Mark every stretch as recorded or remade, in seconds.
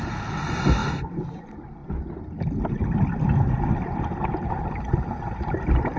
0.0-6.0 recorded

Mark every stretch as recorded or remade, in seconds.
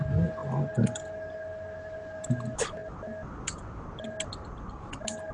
0.0-5.3 recorded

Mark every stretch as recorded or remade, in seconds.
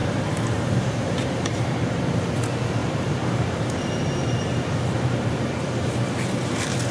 0.0-2.0 remade; 2.0-2.8 recorded; 2.8-6.9 remade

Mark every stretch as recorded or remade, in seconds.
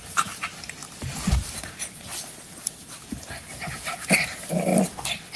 0.0-0.8 remade; 0.8-3.7 recorded; 3.7-4.7 remade; 4.7-5.4 recorded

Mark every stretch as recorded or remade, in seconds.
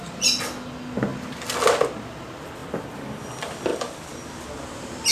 0.0-1.1 recorded; 1.1-1.8 remade; 1.8-3.7 recorded; 3.7-4.3 remade; 4.3-5.1 recorded